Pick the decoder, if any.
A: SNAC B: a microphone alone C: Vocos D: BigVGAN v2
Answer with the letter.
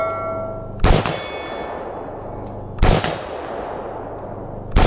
B